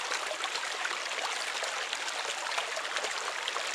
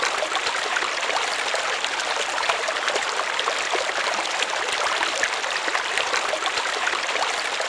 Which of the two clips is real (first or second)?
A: first